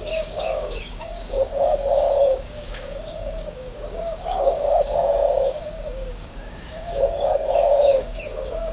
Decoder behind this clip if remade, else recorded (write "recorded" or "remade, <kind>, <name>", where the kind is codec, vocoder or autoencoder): remade, codec, DAC